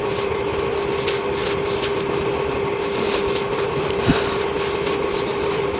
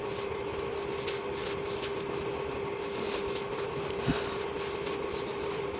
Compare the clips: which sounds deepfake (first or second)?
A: first